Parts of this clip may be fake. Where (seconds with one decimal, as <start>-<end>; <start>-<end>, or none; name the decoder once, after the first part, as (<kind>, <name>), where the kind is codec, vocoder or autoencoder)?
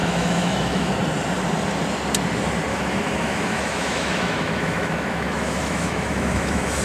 0.0-0.9 (autoencoder, DAC-VAE); 2.7-6.8